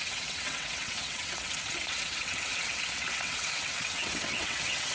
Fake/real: fake